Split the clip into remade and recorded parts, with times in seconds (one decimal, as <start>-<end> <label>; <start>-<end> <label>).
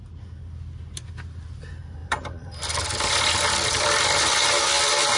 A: 0.0-2.0 recorded; 2.0-4.3 remade; 4.3-5.2 recorded